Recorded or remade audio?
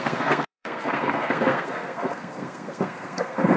remade